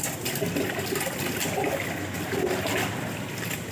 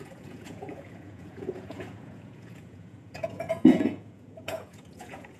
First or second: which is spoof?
second